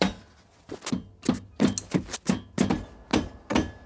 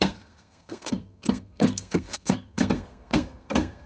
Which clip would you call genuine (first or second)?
first